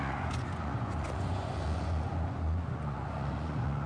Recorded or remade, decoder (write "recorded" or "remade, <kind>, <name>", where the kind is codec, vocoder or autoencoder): remade, vocoder, Vocos